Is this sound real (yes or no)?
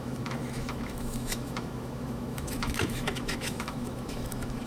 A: no